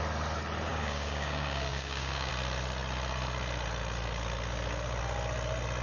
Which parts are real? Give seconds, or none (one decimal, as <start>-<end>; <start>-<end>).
0.0-0.7; 2.3-5.8